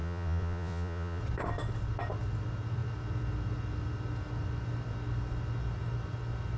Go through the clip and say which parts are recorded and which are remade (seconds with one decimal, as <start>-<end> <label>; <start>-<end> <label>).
0.0-1.2 remade; 1.2-6.6 recorded